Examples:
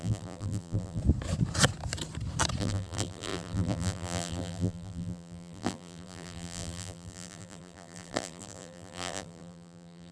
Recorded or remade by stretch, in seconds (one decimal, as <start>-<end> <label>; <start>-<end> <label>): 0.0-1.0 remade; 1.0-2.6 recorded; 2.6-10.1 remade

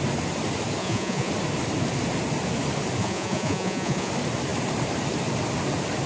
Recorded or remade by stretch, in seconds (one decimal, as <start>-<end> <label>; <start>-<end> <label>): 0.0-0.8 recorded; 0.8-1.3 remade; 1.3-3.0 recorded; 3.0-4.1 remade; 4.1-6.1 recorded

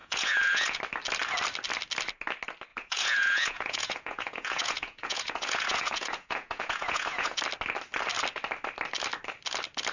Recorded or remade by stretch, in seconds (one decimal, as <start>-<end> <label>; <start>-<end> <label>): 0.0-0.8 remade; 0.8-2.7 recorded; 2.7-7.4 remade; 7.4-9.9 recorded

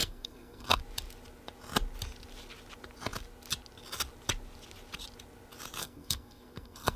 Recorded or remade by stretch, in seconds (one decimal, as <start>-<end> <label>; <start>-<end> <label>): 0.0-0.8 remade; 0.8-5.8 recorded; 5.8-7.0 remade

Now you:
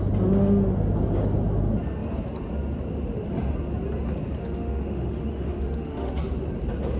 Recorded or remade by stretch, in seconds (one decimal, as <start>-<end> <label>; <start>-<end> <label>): 0.0-4.4 recorded; 4.4-6.1 remade; 6.1-7.0 recorded

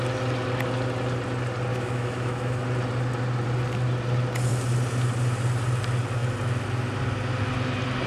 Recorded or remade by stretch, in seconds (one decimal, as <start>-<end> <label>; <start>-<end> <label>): 0.0-1.7 recorded; 1.7-2.6 remade; 2.6-8.1 recorded

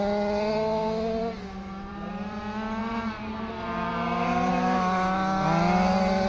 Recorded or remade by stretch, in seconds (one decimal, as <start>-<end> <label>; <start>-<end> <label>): 0.0-1.9 recorded; 1.9-2.4 remade; 2.4-2.8 recorded; 2.8-3.5 remade; 3.5-3.9 recorded; 3.9-4.5 remade; 4.5-6.3 recorded

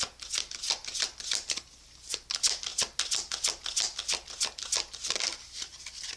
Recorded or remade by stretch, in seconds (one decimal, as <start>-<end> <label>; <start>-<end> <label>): 0.0-6.2 recorded